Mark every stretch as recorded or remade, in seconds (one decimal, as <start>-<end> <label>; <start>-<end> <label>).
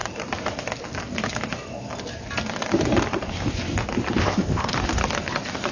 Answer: 0.0-4.2 recorded; 4.2-4.7 remade; 4.7-5.7 recorded